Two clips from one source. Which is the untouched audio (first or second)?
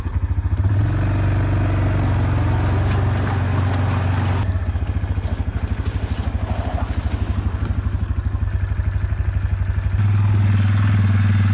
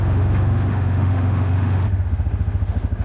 first